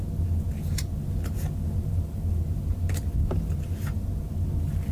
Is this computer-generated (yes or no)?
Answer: no